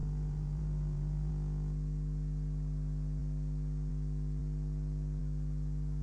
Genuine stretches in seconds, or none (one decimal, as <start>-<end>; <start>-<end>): 1.3-6.0